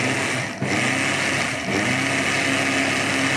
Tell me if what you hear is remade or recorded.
recorded